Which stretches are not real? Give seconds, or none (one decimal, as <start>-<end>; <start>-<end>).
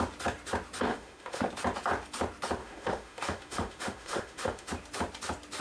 0.9-1.5; 2.6-4.7